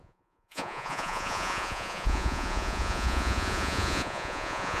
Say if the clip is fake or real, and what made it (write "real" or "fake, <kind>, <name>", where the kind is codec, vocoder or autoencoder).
fake, vocoder, Vocos